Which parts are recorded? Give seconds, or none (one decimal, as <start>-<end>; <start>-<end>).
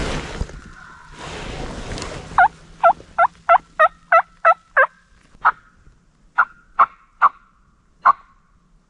0.0-8.9